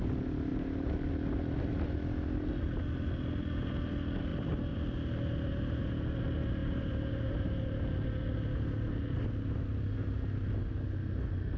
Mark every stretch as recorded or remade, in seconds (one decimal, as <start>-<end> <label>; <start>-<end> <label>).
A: 0.0-0.5 recorded; 0.5-1.1 remade; 1.1-6.6 recorded; 6.6-7.8 remade; 7.8-11.6 recorded